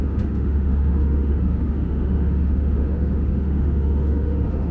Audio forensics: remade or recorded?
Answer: remade